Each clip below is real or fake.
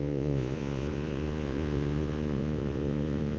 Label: fake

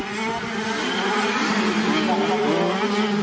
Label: real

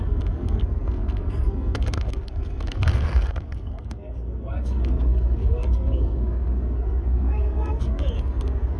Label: fake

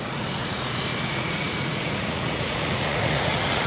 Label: fake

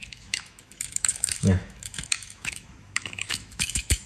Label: fake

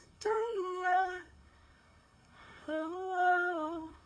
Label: fake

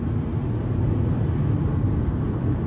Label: real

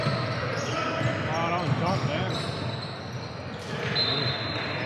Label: real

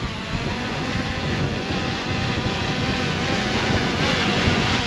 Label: fake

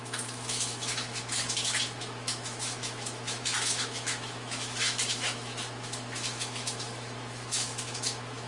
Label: fake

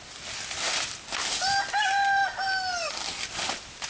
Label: real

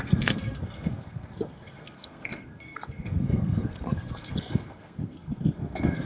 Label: fake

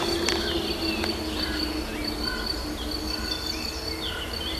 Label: real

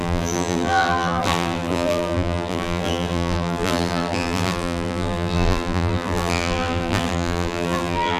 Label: fake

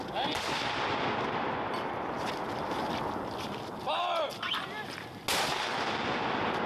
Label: real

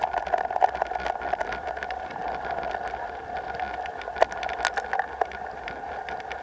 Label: real